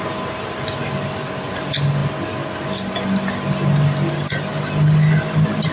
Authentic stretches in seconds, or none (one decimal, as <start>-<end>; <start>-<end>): 2.0-2.6; 4.5-5.2